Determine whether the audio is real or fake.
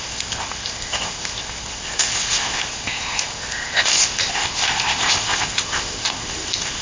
fake